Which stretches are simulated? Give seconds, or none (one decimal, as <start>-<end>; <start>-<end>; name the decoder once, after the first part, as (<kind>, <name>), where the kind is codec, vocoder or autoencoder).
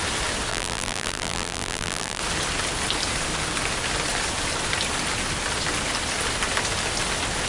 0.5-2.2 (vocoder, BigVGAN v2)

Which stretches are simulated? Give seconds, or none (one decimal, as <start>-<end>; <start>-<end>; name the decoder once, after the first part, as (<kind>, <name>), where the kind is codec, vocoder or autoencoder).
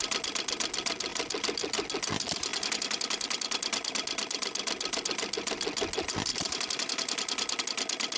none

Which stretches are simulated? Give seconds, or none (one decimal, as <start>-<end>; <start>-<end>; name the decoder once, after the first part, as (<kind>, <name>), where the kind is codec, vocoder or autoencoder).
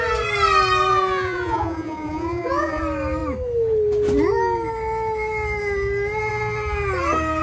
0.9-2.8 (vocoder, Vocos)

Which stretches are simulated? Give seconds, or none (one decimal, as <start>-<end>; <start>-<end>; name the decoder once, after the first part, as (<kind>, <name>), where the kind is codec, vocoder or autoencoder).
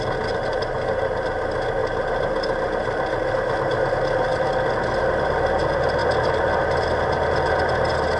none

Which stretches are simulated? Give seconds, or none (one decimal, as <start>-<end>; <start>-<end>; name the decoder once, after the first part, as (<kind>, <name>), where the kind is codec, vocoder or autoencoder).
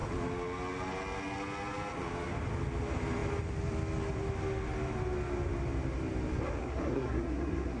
6.6-7.8 (codec, SNAC)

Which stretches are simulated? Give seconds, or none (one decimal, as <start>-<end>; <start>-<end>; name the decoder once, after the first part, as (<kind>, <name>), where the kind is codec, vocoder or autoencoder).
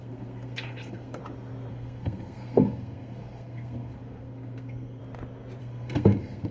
0.0-1.2 (codec, SNAC); 1.7-5.0; 5.6-6.5